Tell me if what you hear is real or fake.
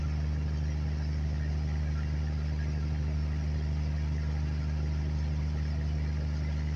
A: real